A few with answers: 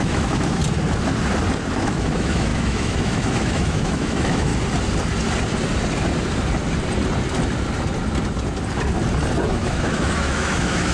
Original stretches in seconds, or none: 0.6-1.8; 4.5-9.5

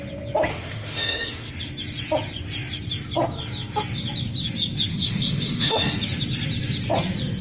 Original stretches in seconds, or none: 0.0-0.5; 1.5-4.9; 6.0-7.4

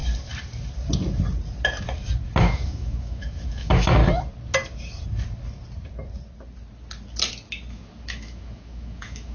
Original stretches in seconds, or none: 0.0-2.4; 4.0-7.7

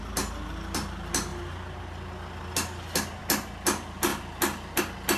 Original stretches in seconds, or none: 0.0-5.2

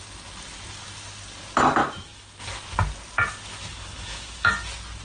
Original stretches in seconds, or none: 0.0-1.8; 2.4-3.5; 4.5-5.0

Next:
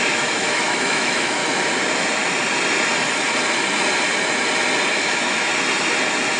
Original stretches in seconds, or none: 1.4-4.9; 5.5-6.4

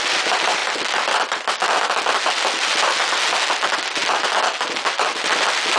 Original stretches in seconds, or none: 0.0-5.8